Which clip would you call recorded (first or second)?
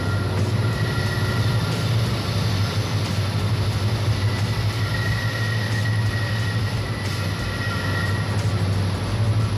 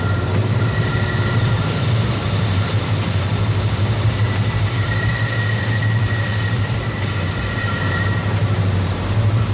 first